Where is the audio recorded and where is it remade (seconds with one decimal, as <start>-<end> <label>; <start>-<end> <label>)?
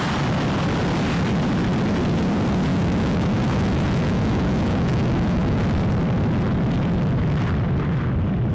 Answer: 0.0-2.7 recorded; 2.7-5.6 remade; 5.6-8.5 recorded